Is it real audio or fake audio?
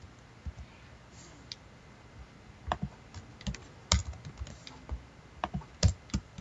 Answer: real